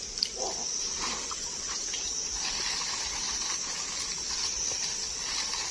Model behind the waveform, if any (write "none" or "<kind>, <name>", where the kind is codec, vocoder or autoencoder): none